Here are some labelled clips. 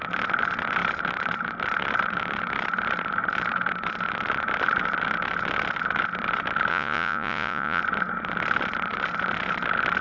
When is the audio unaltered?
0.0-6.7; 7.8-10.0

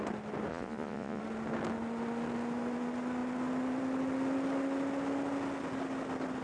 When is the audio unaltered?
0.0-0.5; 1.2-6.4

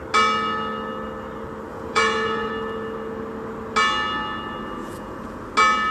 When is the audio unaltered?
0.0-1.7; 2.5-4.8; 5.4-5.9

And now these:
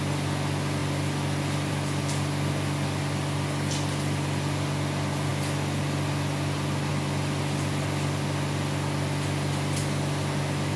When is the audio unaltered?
0.0-10.8

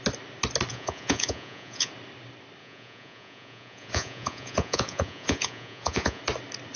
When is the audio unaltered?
0.0-0.7; 1.9-2.6; 6.2-6.8

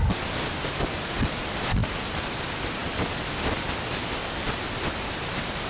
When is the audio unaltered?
0.0-5.7

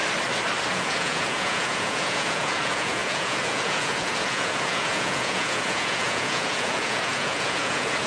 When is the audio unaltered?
0.0-0.7